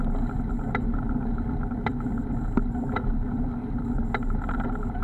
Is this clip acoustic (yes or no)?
yes